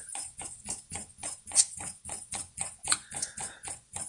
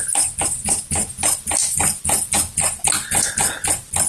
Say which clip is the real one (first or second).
second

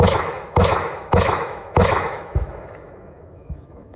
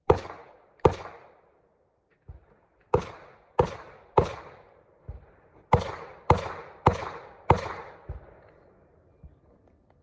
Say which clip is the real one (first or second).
second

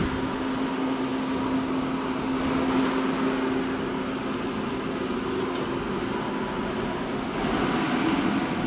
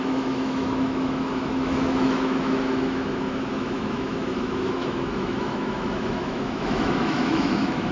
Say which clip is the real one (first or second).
first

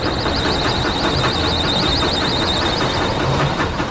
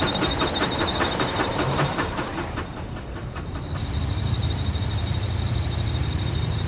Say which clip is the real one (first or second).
first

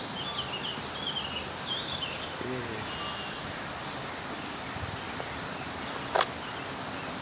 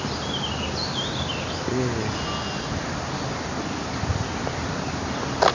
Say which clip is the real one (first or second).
second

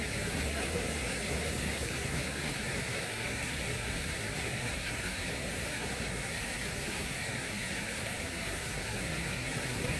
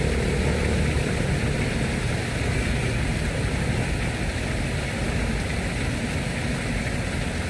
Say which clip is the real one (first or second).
second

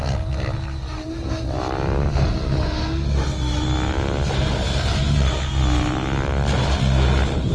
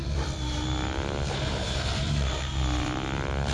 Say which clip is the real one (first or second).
first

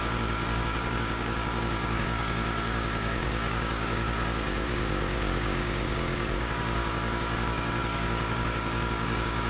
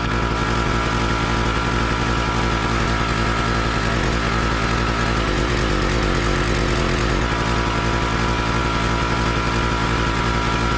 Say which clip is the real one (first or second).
second